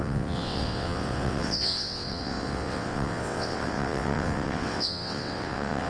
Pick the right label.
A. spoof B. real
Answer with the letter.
A